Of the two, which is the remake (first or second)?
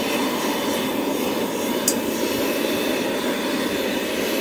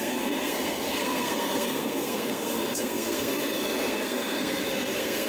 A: second